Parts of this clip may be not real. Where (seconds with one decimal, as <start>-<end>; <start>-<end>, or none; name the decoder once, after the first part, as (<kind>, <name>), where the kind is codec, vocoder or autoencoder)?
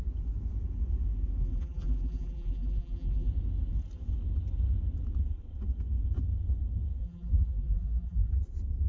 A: 1.4-3.3 (vocoder, BigVGAN v2); 7.0-8.3